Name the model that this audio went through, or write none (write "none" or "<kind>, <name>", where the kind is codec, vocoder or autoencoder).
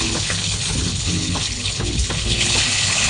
codec, HILCodec